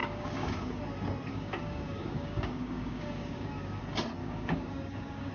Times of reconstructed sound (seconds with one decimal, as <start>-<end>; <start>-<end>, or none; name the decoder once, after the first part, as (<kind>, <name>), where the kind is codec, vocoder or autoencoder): 0.0-0.8 (codec, DAC); 1.3-3.8; 4.2-5.3